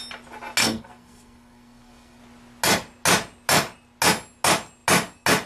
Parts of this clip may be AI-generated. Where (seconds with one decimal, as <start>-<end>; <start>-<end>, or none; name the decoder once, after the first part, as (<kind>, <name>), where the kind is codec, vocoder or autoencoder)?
0.6-2.2 (codec, SNAC)